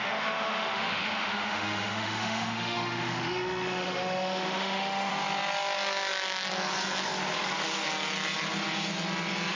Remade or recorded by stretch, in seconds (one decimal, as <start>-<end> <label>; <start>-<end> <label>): 0.0-5.1 remade; 5.1-9.5 recorded